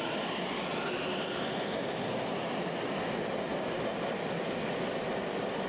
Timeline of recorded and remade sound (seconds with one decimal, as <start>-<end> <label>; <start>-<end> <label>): 0.0-5.7 recorded